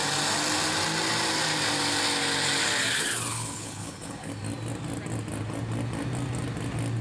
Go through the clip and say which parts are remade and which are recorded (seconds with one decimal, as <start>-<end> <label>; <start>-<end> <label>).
0.0-3.3 recorded; 3.3-4.3 remade; 4.3-7.0 recorded